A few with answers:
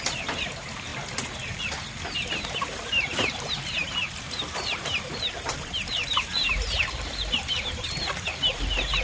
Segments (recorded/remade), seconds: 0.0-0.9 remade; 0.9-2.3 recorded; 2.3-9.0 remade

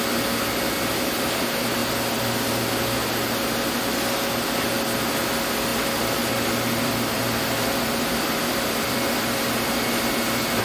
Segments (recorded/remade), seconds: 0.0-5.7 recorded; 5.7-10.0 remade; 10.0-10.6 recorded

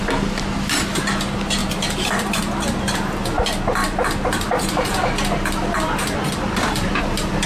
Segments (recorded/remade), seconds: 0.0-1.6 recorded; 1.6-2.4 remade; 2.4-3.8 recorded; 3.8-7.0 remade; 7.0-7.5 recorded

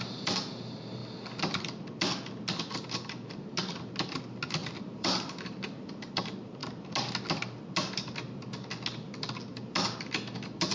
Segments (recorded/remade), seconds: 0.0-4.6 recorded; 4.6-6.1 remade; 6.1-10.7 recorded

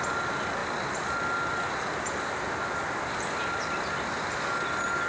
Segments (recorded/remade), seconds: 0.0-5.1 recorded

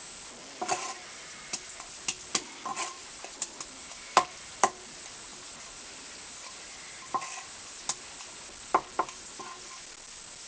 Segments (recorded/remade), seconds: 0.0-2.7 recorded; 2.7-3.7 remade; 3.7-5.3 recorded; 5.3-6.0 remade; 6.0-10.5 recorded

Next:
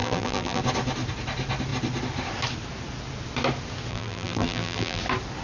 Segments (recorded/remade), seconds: 0.0-0.6 remade; 0.6-3.9 recorded; 3.9-5.0 remade; 5.0-5.4 recorded

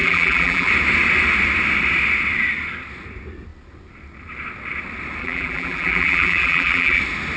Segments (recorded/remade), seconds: 0.0-0.7 remade; 0.7-5.2 recorded; 5.2-7.0 remade; 7.0-7.4 recorded